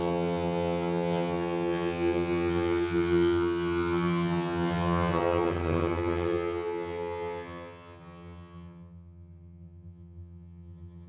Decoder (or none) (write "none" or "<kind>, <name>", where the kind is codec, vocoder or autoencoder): vocoder, HiFi-GAN